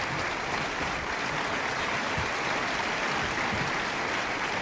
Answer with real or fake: real